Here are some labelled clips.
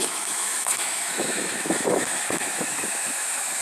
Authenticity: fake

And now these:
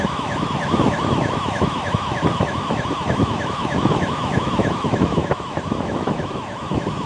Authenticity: fake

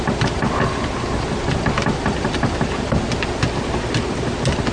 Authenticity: real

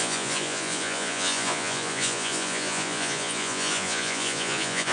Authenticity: fake